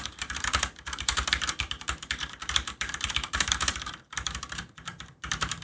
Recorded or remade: remade